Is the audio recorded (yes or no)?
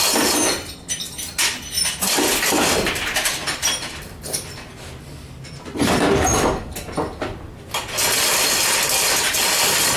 yes